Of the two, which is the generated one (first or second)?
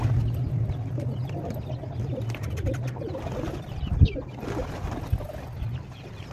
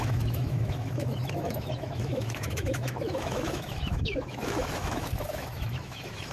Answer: second